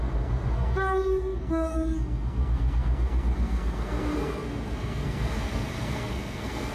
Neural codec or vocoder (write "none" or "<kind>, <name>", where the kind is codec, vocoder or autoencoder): codec, SNAC